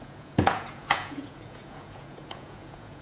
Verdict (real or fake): fake